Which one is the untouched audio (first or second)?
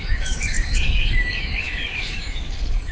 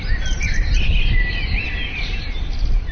second